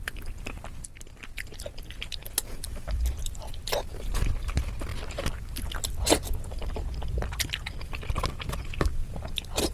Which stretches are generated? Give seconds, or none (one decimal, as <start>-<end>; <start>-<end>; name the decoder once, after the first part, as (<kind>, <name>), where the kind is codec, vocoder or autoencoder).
none